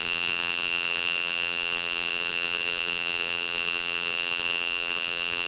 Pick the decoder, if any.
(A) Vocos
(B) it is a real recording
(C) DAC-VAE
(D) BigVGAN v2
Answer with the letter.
D